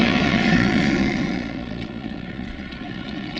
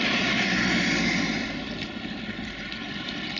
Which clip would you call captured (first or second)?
second